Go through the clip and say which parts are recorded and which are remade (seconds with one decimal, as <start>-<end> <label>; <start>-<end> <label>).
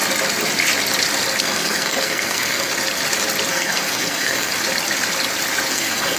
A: 0.0-1.4 recorded; 1.4-2.7 remade; 2.7-3.5 recorded; 3.5-4.5 remade; 4.5-5.7 recorded; 5.7-6.2 remade